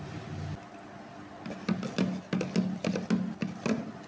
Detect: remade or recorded recorded